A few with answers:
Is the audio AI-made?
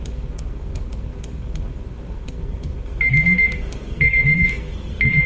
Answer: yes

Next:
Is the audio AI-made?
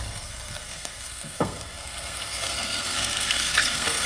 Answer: yes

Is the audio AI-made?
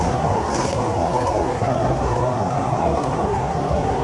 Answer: yes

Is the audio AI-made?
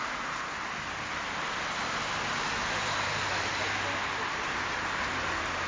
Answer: no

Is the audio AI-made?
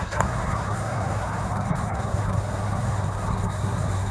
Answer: yes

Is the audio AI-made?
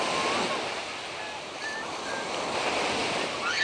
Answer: no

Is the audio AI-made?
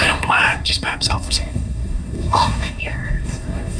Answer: yes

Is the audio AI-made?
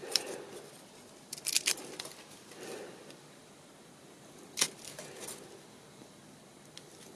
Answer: no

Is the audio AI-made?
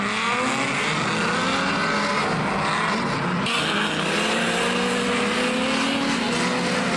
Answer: no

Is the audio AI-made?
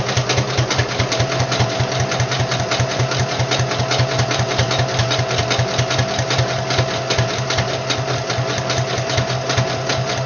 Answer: no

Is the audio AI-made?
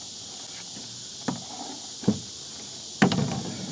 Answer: no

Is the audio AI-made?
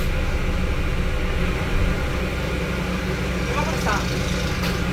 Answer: no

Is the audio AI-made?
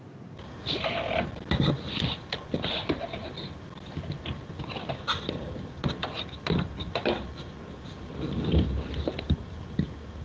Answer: no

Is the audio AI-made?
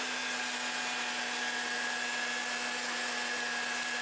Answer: no